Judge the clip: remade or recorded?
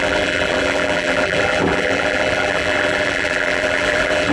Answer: remade